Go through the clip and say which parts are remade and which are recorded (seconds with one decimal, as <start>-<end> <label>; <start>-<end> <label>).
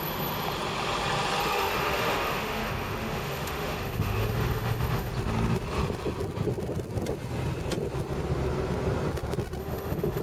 0.0-1.4 recorded; 1.4-5.1 remade; 5.1-9.6 recorded; 9.6-10.2 remade